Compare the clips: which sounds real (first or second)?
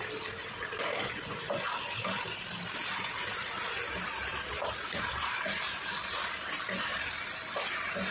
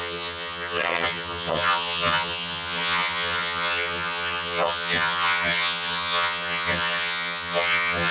first